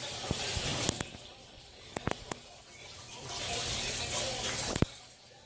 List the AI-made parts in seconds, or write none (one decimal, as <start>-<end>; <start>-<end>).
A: none